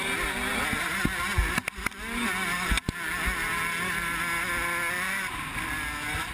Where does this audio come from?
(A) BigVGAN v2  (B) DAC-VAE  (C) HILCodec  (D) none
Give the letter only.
D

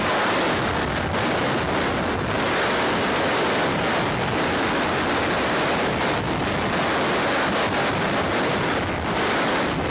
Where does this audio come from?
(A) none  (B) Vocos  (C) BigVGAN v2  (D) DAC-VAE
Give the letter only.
A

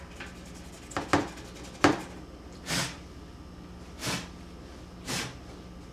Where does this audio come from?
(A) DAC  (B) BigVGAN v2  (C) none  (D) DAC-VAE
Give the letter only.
C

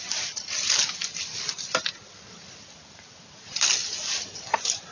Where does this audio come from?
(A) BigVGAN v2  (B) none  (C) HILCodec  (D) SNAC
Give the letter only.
A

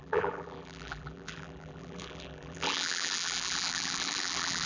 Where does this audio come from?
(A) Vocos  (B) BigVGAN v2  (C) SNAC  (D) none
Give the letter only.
B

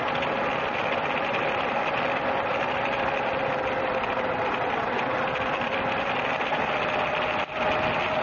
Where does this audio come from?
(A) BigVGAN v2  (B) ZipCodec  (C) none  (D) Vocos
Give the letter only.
C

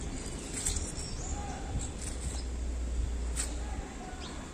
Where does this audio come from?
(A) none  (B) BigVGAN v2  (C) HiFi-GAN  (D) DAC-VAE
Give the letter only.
A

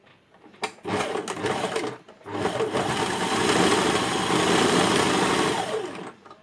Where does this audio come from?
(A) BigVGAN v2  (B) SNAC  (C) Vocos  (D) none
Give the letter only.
D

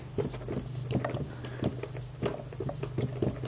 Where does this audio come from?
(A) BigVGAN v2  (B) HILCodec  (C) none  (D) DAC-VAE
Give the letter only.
C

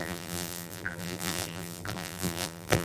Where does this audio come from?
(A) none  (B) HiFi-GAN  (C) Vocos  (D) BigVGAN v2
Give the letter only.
D